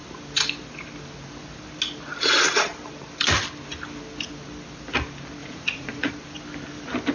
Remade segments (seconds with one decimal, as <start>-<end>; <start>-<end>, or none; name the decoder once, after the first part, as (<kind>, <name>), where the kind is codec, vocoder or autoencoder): 5.4-6.1 (vocoder, Vocos)